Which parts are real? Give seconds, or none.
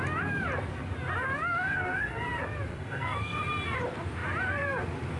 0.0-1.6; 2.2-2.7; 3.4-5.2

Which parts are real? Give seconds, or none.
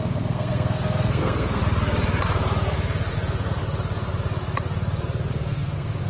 1.6-5.3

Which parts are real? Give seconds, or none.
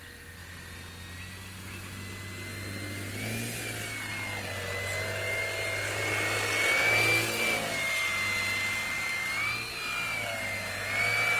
0.0-11.4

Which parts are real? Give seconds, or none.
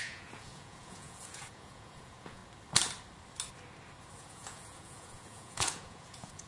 2.4-4.2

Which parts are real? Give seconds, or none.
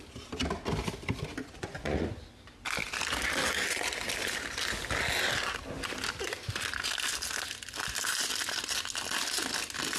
0.0-1.4; 2.1-10.0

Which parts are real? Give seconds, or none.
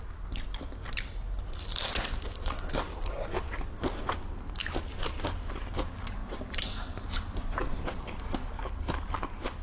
0.0-4.6; 5.2-6.2; 8.2-9.6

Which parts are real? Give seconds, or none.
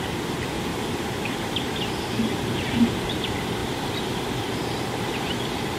0.0-0.7; 2.4-3.6; 4.6-5.8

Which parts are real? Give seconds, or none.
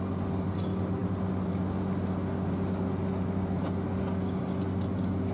0.0-5.3